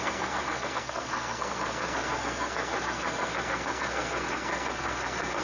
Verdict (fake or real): fake